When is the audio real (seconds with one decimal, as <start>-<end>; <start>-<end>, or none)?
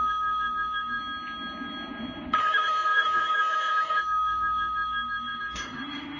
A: 1.0-2.4